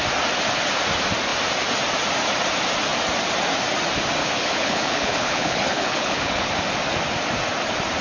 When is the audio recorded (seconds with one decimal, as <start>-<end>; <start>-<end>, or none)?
0.0-4.2; 6.5-8.0

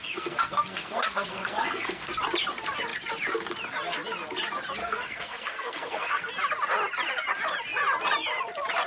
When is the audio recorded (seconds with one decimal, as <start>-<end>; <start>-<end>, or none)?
2.1-4.8; 6.3-8.9

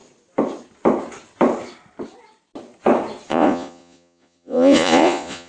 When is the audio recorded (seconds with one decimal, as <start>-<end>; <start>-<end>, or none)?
0.0-3.3

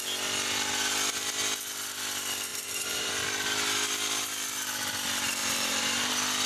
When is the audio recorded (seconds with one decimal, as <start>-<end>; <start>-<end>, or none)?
0.0-2.5; 3.1-5.4; 6.1-6.5

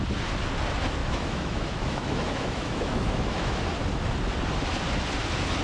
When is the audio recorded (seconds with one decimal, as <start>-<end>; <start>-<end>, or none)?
0.0-1.0; 3.6-5.6

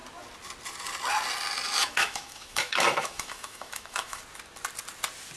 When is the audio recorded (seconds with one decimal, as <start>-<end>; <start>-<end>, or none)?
0.0-1.8; 4.2-5.4

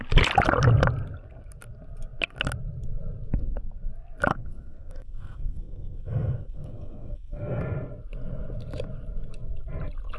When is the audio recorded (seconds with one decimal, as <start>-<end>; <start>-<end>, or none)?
0.0-4.3; 7.6-10.2